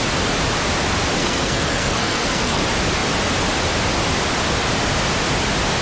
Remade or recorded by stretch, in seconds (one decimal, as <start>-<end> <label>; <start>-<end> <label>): 0.0-1.2 recorded; 1.2-2.6 remade; 2.6-5.8 recorded